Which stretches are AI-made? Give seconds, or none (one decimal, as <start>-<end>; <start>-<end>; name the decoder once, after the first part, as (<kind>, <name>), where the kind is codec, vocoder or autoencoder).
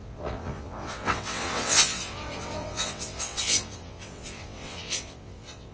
0.0-5.7 (vocoder, WaveNeXt)